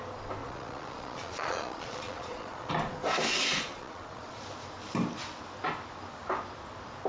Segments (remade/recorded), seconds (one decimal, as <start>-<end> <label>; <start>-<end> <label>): 0.0-0.4 recorded; 0.4-2.7 remade; 2.7-3.5 recorded; 3.5-4.4 remade; 4.4-7.1 recorded